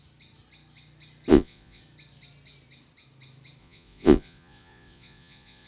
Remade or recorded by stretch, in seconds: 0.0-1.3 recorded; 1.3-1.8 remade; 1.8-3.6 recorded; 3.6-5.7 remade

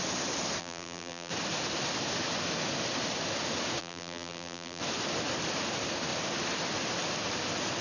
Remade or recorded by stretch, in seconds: 0.0-0.6 recorded; 0.6-1.3 remade; 1.3-3.8 recorded; 3.8-4.8 remade; 4.8-7.8 recorded